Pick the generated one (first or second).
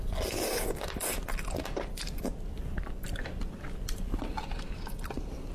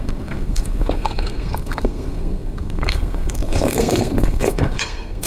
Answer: second